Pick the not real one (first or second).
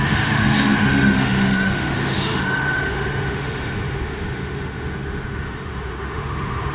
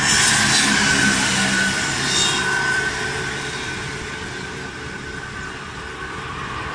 first